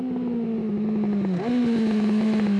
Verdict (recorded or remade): recorded